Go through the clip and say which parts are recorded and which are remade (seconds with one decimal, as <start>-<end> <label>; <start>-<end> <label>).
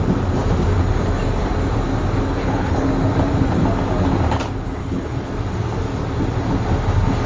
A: 0.0-2.4 recorded; 2.4-2.9 remade; 2.9-4.8 recorded; 4.8-5.3 remade; 5.3-7.3 recorded